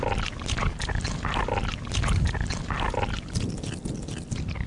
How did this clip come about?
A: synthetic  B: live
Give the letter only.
B